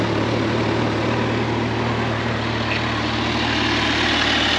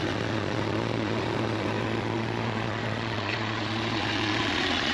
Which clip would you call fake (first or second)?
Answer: second